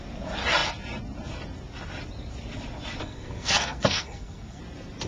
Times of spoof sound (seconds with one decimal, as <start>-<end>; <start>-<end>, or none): 3.0-4.6